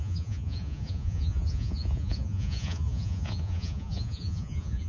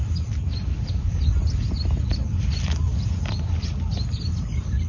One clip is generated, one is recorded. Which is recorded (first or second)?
second